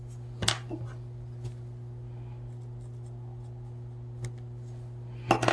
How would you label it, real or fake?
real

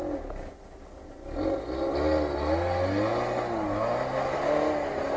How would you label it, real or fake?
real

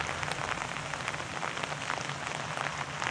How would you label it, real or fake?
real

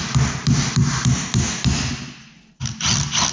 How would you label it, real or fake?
real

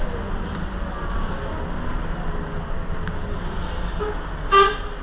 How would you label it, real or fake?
real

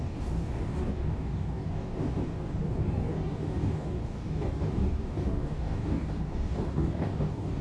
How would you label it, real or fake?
fake